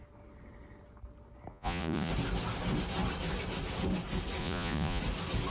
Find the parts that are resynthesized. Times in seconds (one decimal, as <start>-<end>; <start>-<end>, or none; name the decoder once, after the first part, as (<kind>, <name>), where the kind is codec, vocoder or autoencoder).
1.5-2.1 (vocoder, Vocos); 4.4-5.0